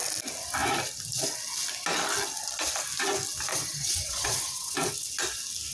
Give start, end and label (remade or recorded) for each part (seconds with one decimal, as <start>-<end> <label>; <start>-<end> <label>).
0.0-3.5 recorded; 3.5-4.9 remade; 4.9-5.7 recorded